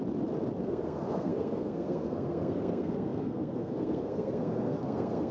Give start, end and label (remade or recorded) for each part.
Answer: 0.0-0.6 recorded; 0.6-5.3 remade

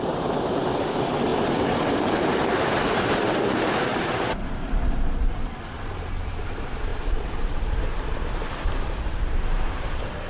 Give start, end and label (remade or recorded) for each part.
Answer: 0.0-10.3 remade

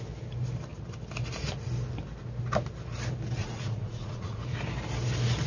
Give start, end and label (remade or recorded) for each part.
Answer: 0.0-3.4 recorded; 3.4-4.4 remade; 4.4-5.5 recorded